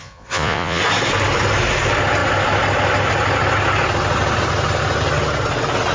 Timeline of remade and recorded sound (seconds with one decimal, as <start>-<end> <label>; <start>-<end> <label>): 0.0-0.8 remade; 0.8-5.9 recorded